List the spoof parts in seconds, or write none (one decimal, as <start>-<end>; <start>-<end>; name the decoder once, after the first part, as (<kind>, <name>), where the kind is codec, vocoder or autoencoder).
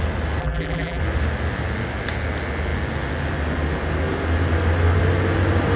0.4-1.0 (vocoder, BigVGAN v2)